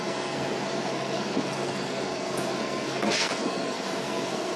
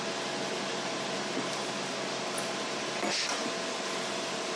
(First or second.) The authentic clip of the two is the second